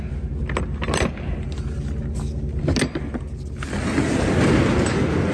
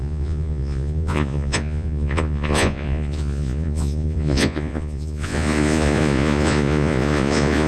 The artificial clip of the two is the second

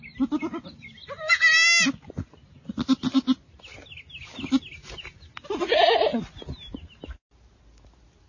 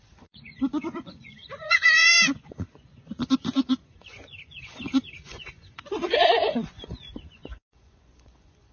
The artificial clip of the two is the second